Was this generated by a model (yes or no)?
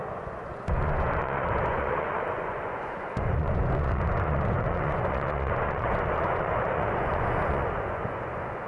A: yes